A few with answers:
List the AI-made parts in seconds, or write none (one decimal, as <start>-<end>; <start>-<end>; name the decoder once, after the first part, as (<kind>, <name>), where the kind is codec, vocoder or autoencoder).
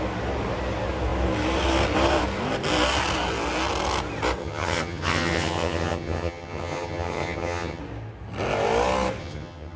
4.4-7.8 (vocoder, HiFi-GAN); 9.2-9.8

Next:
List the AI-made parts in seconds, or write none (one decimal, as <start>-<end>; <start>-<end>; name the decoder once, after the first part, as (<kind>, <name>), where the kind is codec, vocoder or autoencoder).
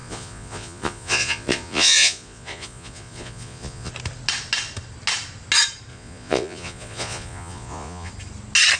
0.0-3.9 (vocoder, Vocos); 5.9-8.1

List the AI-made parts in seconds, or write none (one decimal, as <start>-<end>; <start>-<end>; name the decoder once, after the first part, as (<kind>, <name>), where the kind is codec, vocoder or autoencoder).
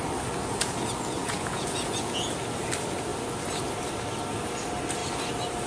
1.2-2.3 (vocoder, Vocos)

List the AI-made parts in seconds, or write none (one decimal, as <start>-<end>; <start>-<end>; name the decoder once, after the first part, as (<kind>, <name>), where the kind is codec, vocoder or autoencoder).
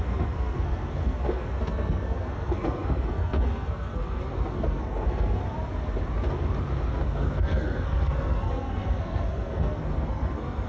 0.0-5.4 (codec, SNAC); 6.9-10.7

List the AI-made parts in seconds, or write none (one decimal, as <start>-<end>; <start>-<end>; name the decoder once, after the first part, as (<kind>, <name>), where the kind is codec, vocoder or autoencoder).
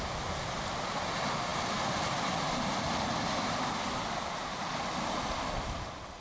none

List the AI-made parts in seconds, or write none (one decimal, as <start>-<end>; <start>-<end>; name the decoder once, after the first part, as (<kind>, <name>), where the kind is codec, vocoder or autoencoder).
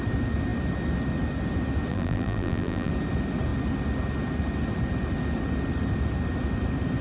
1.9-2.9 (vocoder, BigVGAN v2)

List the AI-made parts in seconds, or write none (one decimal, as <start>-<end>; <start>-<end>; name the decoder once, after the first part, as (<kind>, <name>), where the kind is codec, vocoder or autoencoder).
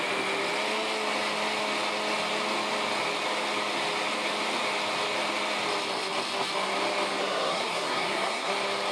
7.2-8.5 (codec, SNAC)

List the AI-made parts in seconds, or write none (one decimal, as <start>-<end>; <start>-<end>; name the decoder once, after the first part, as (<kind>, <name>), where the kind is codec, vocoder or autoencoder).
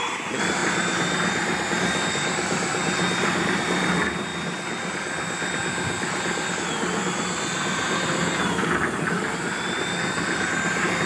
0.0-0.6 (vocoder, BigVGAN v2); 2.1-4.3; 6.5-11.1